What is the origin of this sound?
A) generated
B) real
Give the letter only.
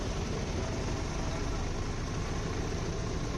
B